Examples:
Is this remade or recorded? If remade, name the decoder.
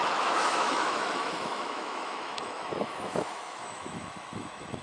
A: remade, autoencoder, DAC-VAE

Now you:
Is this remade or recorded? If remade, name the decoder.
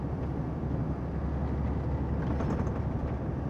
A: recorded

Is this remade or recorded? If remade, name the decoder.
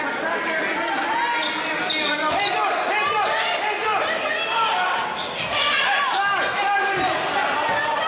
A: recorded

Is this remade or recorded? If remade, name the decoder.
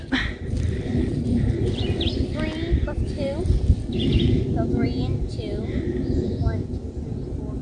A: recorded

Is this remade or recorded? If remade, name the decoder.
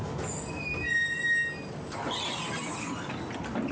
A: recorded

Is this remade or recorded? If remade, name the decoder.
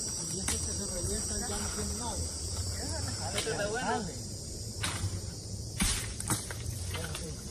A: remade, vocoder, BigVGAN v2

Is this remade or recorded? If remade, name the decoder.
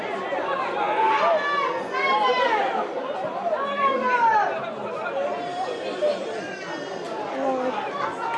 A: recorded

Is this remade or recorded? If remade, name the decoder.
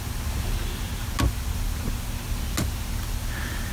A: recorded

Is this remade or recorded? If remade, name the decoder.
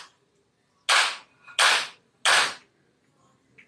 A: recorded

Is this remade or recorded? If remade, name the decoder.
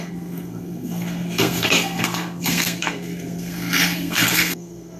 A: remade, codec, SNAC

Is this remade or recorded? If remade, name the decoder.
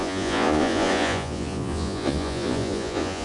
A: remade, vocoder, Vocos